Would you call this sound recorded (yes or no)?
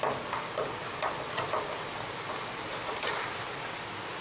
yes